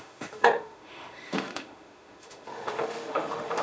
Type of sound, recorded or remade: remade